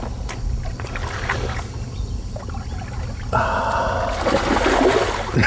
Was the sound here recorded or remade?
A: recorded